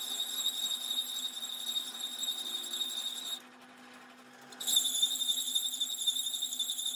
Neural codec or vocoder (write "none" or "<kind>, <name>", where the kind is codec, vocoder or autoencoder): none